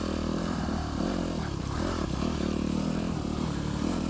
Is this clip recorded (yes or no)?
no